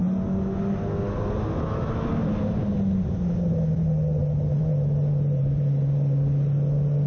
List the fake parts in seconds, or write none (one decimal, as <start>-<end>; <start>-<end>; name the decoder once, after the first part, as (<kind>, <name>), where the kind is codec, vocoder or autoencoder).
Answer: none